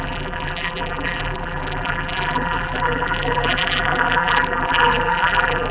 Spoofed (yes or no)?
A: yes